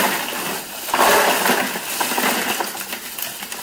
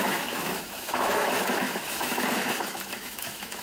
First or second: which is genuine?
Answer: first